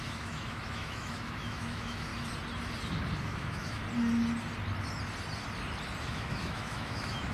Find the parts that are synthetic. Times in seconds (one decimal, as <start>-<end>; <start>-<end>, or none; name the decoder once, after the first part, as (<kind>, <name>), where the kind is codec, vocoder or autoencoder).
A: 0.0-2.1 (autoencoder, DAC-VAE); 3.2-3.8; 6.0-7.3